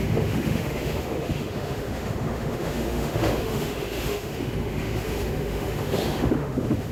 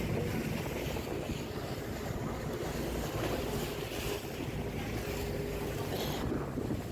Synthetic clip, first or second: first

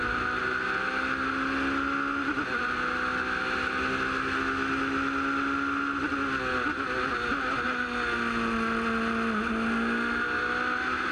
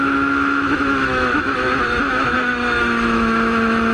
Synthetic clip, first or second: second